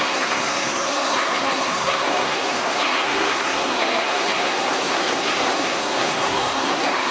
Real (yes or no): no